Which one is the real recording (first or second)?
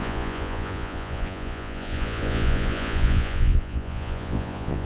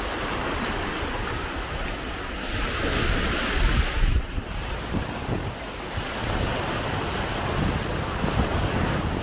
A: second